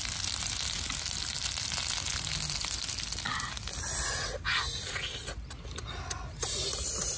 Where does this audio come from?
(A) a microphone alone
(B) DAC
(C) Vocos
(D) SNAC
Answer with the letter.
A